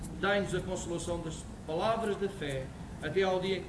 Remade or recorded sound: recorded